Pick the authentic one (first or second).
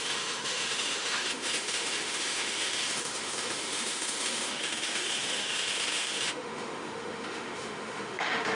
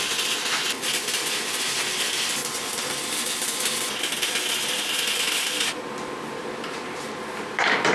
second